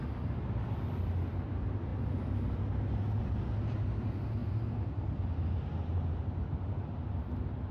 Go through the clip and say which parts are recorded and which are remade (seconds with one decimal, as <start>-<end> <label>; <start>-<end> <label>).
0.0-7.7 recorded